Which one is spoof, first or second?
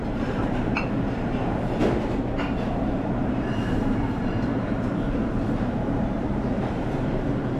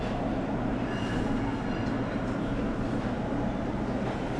first